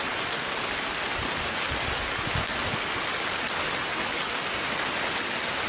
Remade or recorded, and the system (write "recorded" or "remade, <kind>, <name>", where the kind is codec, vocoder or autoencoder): recorded